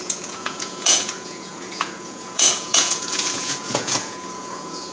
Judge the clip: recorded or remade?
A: remade